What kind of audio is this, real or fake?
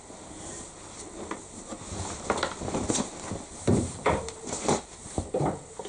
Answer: real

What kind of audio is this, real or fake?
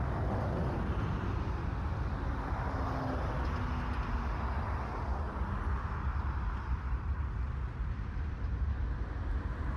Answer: real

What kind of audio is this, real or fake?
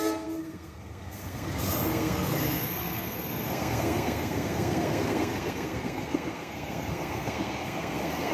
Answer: fake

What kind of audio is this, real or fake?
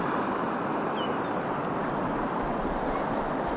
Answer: real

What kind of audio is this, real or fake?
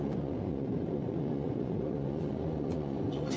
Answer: fake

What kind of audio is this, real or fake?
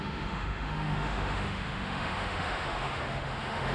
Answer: fake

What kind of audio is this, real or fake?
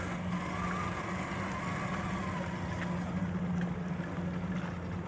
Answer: real